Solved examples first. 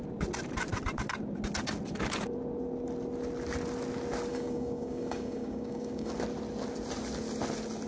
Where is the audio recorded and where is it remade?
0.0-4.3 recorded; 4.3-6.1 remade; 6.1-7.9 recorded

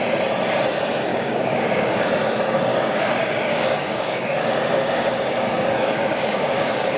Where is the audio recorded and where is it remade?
0.0-1.1 recorded; 1.1-2.1 remade; 2.1-2.7 recorded; 2.7-7.0 remade